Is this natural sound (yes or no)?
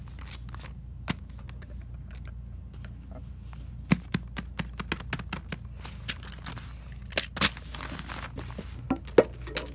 yes